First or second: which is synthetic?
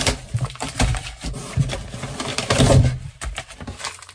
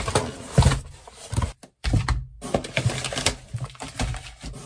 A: first